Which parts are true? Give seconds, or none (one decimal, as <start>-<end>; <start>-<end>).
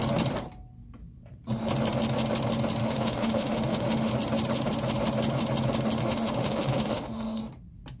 0.0-2.8; 4.1-6.0; 7.4-8.0